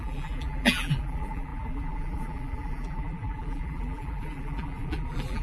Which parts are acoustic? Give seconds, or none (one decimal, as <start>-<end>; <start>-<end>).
none